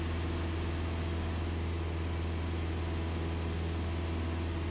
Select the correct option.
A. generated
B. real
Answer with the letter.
B